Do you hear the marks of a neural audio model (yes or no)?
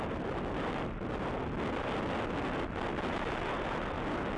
no